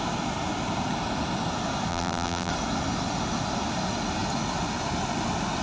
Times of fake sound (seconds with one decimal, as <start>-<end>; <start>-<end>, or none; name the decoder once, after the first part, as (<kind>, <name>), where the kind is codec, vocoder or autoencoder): 1.9-2.5 (vocoder, BigVGAN v2)